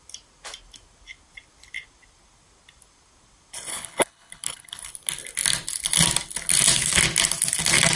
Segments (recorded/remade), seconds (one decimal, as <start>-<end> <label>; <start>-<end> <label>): 0.0-3.7 recorded; 3.7-4.8 remade; 4.8-8.0 recorded